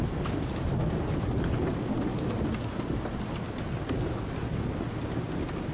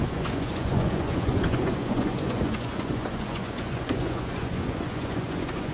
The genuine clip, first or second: first